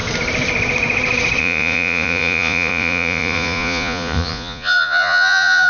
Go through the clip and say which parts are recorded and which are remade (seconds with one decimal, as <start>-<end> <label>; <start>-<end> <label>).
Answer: 0.0-1.4 recorded; 1.4-5.7 remade